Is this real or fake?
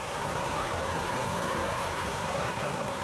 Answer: fake